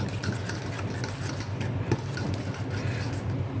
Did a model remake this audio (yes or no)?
no